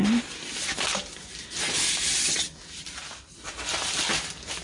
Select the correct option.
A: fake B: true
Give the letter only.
B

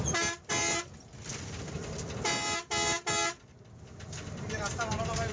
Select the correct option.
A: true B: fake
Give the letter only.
A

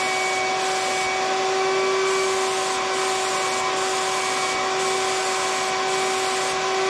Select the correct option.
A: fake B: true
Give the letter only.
B